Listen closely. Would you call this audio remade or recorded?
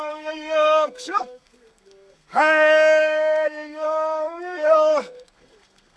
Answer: remade